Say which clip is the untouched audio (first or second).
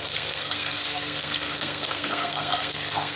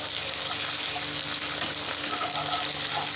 second